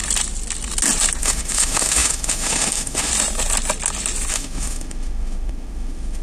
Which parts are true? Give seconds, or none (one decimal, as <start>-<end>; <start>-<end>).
0.0-1.2; 3.1-4.3